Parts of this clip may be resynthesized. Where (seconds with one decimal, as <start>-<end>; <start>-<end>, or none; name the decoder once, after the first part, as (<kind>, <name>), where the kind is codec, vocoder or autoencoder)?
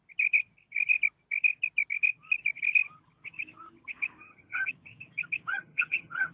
4.2-4.7 (vocoder, HiFi-GAN); 5.5-6.3